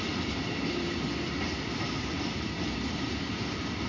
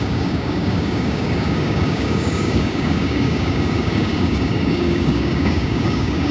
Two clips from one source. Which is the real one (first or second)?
first